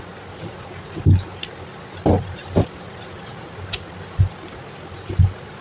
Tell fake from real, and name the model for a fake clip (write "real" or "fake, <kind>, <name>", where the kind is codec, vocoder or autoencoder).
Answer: real